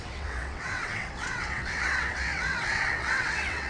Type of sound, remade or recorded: remade